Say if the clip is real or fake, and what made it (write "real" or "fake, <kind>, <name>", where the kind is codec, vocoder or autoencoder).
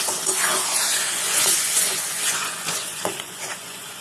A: fake, vocoder, Vocos